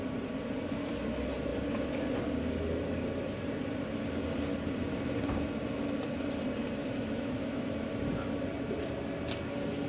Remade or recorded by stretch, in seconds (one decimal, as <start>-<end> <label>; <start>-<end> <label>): 0.0-6.8 recorded; 6.8-7.7 remade; 7.7-9.9 recorded

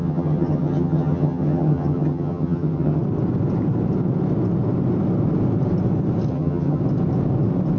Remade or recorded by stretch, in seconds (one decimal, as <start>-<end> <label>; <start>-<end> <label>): 0.0-3.0 remade; 3.0-6.3 recorded; 6.3-6.8 remade; 6.8-7.8 recorded